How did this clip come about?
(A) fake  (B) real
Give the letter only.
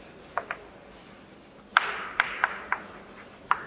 B